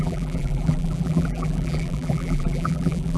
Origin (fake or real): fake